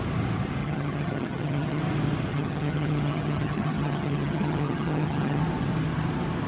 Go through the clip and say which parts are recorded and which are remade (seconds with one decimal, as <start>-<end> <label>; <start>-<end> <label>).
0.0-0.6 recorded; 0.6-1.8 remade; 1.8-2.3 recorded; 2.3-5.4 remade; 5.4-6.5 recorded